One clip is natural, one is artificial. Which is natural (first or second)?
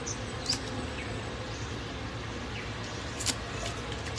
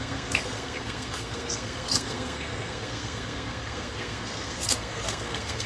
first